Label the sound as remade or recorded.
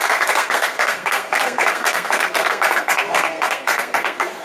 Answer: remade